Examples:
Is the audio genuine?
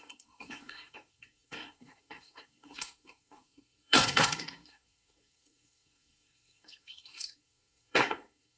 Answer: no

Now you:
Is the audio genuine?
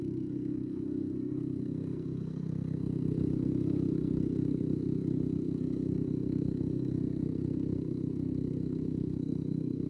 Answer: no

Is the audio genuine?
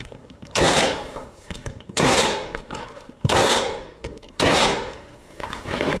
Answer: no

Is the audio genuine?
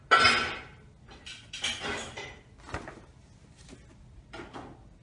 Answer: yes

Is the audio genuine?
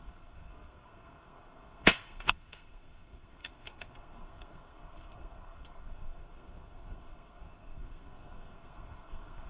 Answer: no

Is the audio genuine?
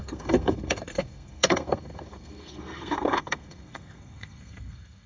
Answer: no